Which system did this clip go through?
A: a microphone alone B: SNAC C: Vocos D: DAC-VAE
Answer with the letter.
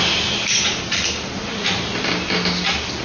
A